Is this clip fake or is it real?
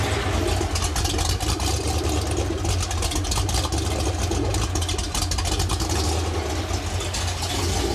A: real